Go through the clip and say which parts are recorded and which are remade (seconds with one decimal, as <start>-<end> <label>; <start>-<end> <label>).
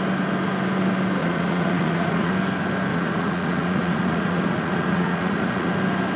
0.0-1.2 recorded; 1.2-2.3 remade; 2.3-2.9 recorded; 2.9-5.7 remade; 5.7-6.2 recorded